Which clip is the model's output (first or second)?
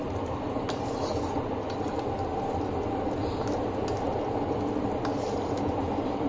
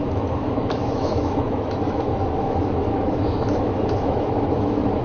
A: second